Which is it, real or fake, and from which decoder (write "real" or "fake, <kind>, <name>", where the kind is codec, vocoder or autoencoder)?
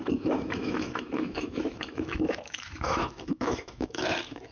fake, autoencoder, DAC-VAE